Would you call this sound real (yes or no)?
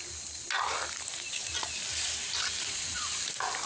yes